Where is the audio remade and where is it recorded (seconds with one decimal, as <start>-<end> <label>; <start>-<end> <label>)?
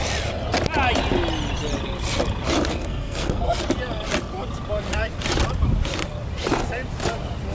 0.0-2.7 recorded; 2.7-3.6 remade; 3.6-7.5 recorded